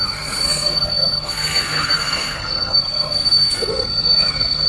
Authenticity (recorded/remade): remade